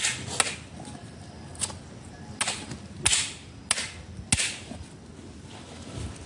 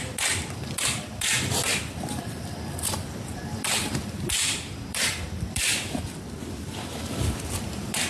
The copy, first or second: second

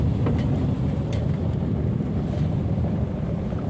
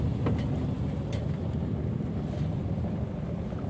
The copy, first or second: first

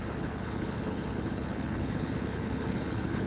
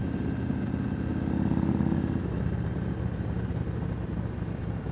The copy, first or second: first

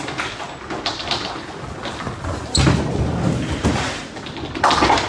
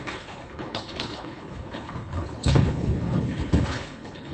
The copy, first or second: second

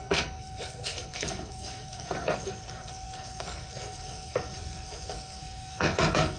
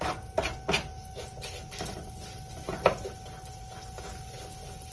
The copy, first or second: first